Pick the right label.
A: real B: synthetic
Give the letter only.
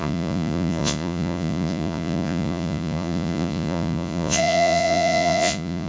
B